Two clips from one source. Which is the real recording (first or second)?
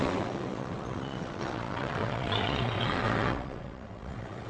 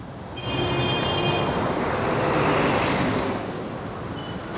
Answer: second